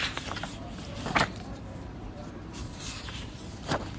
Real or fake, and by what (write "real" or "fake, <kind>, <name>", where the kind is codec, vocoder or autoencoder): fake, vocoder, BigVGAN v2